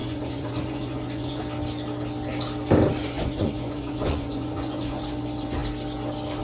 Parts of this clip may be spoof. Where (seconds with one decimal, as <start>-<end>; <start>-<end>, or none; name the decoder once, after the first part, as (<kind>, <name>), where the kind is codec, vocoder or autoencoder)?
0.0-1.4 (vocoder, Vocos); 3.0-5.0